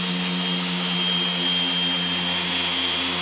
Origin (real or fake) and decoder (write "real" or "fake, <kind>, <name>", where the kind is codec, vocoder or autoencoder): real